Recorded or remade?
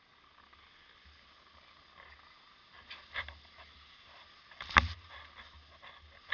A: recorded